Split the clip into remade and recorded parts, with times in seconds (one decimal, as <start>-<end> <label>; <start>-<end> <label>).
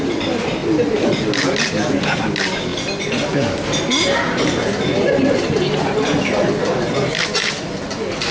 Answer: 0.0-8.3 recorded